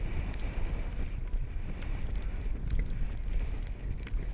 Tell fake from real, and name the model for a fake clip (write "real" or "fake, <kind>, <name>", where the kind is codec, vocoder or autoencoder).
real